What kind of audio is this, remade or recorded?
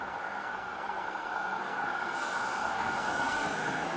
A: remade